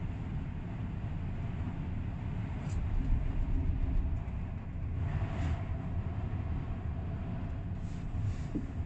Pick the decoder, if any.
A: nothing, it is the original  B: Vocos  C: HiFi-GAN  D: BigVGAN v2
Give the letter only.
A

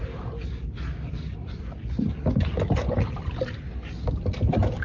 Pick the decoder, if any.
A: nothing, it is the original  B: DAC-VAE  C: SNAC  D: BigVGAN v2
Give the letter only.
A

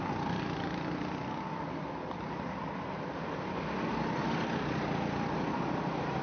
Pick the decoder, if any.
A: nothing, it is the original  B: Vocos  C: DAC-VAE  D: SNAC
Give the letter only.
A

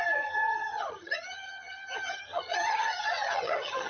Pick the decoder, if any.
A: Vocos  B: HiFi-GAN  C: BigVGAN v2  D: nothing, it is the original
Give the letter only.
B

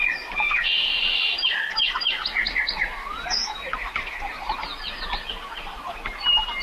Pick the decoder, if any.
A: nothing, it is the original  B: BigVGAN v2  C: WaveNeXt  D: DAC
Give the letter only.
A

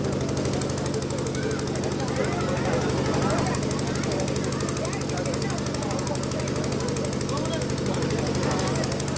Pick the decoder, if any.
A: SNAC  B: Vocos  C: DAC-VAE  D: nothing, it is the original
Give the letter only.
D